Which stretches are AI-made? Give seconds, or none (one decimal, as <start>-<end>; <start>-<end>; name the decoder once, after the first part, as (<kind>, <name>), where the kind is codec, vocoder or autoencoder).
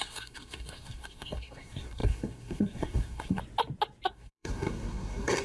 0.0-3.4 (codec, SNAC); 4.1-5.4